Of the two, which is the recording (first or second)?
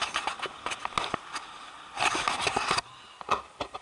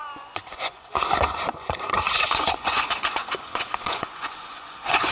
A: first